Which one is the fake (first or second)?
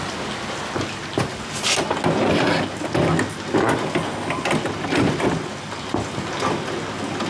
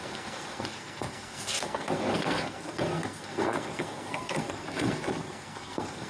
second